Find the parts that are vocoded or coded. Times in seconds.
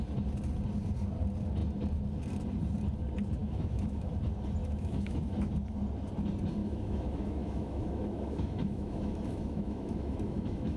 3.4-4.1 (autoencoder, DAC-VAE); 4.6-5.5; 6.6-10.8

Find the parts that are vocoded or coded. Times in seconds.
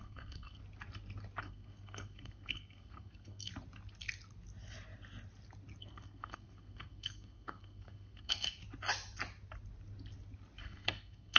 0.0-0.6 (codec, SNAC); 1.4-3.5; 5.8-8.6; 10.6-11.4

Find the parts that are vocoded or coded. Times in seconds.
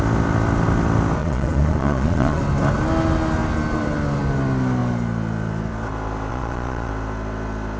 1.2-2.4 (vocoder, Vocos); 6.3-6.9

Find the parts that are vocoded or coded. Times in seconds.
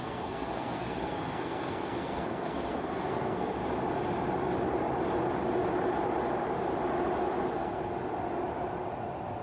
0.0-3.6 (codec, SNAC); 7.5-7.9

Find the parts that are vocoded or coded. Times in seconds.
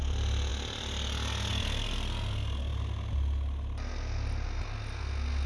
none